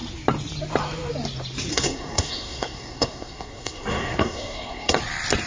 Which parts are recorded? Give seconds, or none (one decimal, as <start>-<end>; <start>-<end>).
0.0-1.7; 5.0-5.5

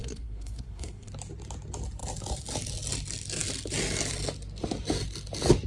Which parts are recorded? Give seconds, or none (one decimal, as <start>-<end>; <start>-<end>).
1.1-5.7

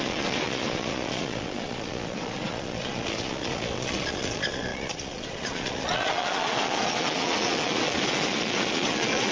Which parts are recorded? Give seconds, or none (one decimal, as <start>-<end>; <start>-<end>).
none

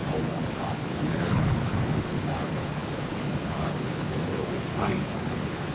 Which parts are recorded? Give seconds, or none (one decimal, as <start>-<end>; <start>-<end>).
none